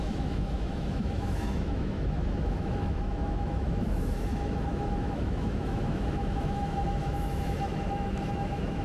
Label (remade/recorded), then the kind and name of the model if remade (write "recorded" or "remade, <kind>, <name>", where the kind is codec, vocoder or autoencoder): remade, autoencoder, DAC-VAE